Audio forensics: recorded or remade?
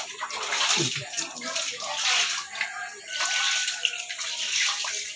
recorded